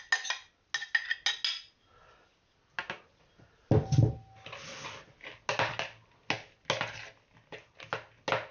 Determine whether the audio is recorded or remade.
recorded